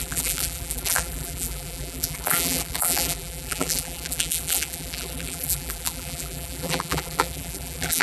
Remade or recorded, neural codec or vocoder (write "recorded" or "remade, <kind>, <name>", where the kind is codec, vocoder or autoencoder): remade, vocoder, BigVGAN v2